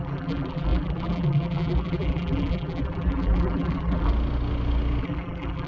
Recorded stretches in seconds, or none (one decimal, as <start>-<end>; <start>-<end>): 4.1-5.0